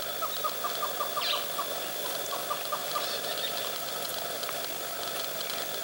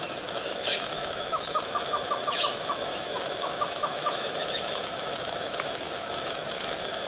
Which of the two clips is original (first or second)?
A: first